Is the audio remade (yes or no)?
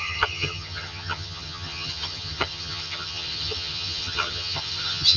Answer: yes